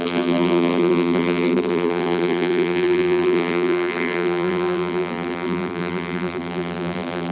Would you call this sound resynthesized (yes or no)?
yes